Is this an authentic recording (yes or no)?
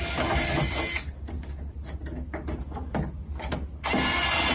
yes